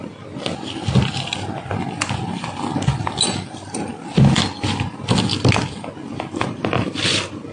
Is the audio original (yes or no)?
yes